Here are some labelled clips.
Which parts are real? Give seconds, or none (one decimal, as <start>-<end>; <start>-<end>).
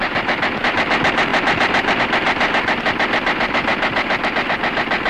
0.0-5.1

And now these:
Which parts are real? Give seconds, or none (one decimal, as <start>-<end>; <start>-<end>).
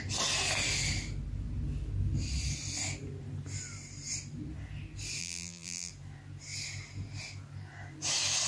0.0-5.2; 5.9-8.5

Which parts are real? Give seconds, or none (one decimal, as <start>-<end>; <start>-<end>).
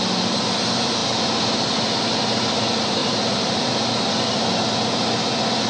0.0-3.0; 3.7-5.7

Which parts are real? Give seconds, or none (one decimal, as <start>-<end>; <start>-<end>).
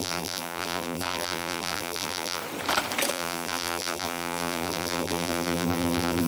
2.4-3.1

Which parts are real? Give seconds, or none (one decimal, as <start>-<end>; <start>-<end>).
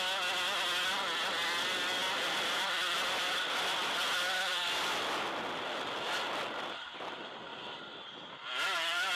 0.0-2.0; 5.3-7.5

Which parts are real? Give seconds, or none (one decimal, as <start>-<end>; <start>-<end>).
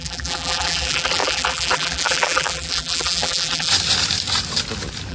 3.7-5.1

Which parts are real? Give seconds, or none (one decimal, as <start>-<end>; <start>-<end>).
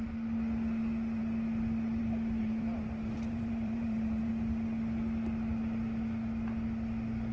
0.0-2.4; 4.3-7.3